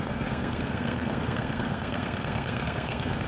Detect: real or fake fake